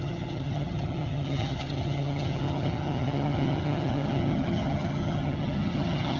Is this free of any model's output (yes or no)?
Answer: no